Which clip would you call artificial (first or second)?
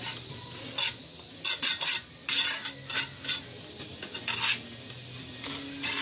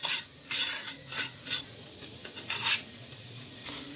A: second